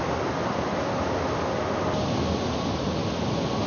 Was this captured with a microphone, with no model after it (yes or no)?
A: yes